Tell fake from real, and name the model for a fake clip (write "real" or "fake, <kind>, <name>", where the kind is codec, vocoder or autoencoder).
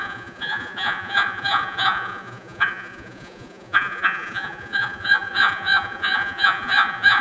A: fake, vocoder, Vocos